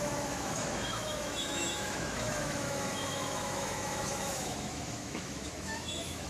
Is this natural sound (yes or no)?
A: no